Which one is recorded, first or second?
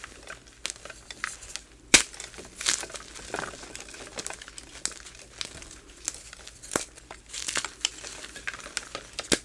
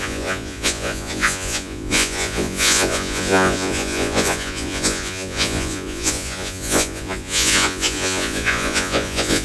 first